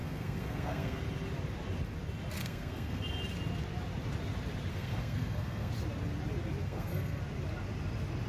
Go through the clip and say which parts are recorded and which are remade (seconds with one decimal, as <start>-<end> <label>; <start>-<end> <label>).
0.0-1.0 remade; 1.0-2.4 recorded; 2.4-3.0 remade; 3.0-4.7 recorded; 4.7-5.7 remade; 5.7-6.6 recorded; 6.6-7.2 remade; 7.2-8.3 recorded